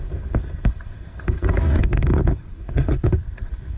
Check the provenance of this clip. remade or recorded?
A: remade